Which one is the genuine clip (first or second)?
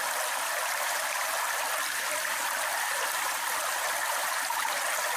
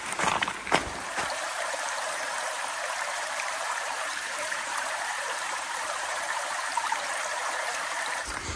first